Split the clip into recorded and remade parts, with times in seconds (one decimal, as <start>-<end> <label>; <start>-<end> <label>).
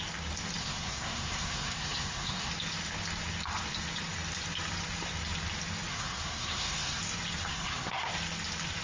0.0-0.6 recorded; 0.6-2.5 remade; 2.5-5.9 recorded; 5.9-7.0 remade; 7.0-7.5 recorded; 7.5-8.1 remade; 8.1-8.8 recorded